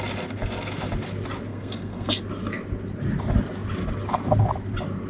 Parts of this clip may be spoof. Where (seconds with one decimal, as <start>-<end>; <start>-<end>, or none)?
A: 1.5-2.2